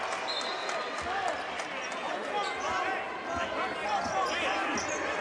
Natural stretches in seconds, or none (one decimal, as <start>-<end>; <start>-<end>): 0.0-5.2